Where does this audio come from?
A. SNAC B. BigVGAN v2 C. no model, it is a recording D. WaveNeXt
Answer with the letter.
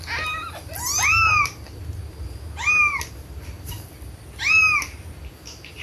C